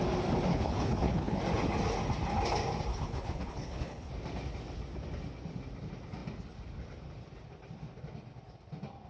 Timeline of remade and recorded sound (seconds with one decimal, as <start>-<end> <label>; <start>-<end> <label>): 0.0-0.5 recorded; 0.5-1.4 remade; 1.4-2.9 recorded; 2.9-4.1 remade; 4.1-9.1 recorded

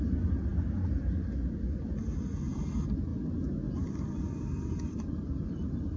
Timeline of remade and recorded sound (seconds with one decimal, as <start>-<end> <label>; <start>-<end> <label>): 0.0-6.0 recorded

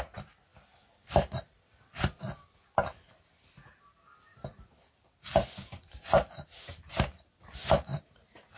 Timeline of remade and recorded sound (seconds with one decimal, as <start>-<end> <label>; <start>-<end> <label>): 0.0-0.5 recorded; 0.5-2.3 remade; 2.3-7.9 recorded; 7.9-8.6 remade

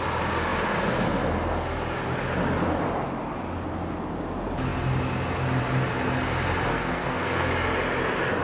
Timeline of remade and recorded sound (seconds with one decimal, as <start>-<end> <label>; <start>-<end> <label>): 0.0-6.7 recorded; 6.7-7.5 remade; 7.5-8.4 recorded